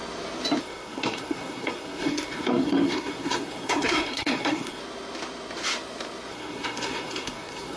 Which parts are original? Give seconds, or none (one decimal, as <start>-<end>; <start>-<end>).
0.0-0.6; 4.8-6.3